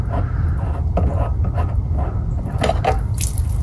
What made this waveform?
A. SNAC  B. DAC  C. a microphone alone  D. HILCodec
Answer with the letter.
C